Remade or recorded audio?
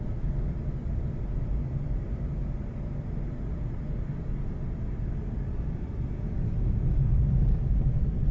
recorded